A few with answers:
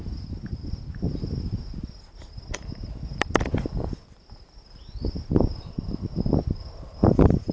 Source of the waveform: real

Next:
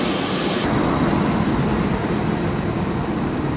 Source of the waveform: fake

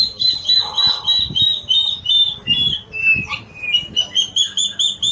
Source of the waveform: real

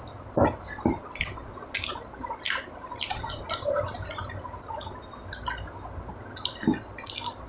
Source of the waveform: real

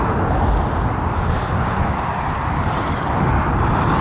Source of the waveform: real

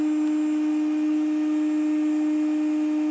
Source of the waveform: real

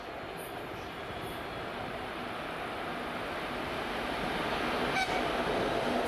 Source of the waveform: real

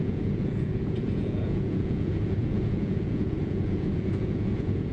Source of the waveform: fake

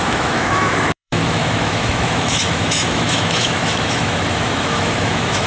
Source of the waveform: fake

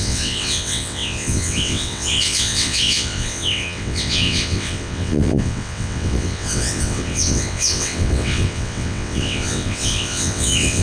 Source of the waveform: fake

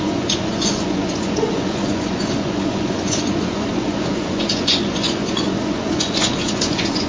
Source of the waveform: fake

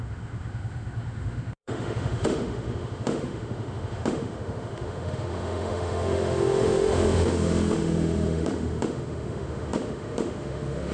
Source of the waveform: fake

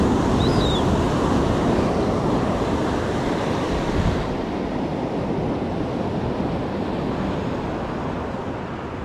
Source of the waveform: real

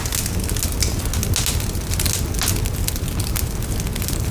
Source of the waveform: real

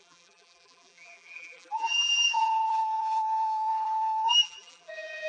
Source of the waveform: fake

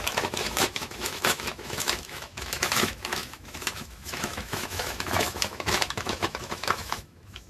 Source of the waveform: fake